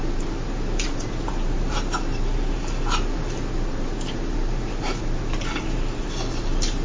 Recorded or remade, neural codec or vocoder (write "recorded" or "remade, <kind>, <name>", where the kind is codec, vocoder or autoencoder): remade, vocoder, BigVGAN v2